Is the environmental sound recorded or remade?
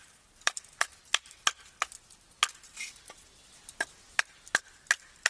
remade